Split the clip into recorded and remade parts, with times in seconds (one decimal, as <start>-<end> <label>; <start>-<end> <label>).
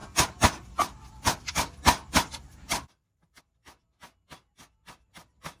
0.0-3.4 remade; 3.4-5.6 recorded